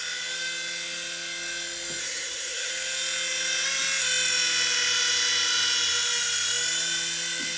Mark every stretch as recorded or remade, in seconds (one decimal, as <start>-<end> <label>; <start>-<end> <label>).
0.0-2.0 recorded; 2.0-2.7 remade; 2.7-7.6 recorded